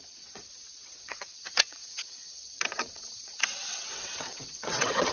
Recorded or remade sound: remade